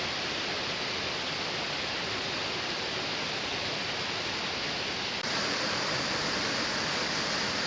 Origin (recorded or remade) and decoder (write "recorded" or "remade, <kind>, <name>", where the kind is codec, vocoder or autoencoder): recorded